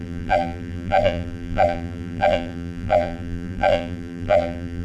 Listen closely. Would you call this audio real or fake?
fake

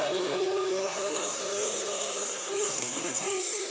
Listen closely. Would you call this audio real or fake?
fake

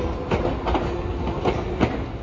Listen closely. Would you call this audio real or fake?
real